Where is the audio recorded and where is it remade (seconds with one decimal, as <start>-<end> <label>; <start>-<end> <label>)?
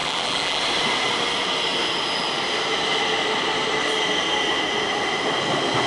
0.0-0.6 remade; 0.6-5.9 recorded